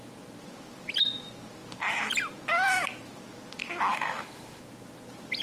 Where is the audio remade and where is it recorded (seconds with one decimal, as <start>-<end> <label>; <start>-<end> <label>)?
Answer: 0.0-3.9 recorded; 3.9-4.6 remade; 4.6-5.4 recorded